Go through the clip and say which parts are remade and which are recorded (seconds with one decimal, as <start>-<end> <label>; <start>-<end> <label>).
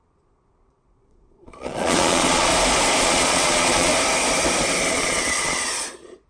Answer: 0.0-2.5 remade; 2.5-3.0 recorded; 3.0-3.9 remade; 3.9-4.9 recorded; 4.9-6.3 remade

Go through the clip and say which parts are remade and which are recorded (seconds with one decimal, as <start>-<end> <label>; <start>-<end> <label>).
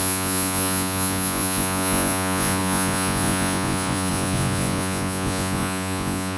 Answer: 0.0-6.4 remade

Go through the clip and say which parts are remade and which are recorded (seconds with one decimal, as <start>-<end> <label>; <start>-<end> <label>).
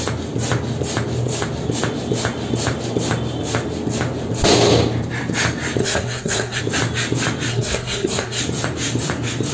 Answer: 0.0-5.8 recorded; 5.8-6.6 remade; 6.6-7.5 recorded; 7.5-8.4 remade; 8.4-9.5 recorded